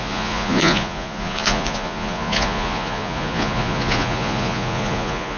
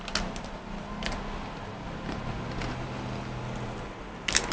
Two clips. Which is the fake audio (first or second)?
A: first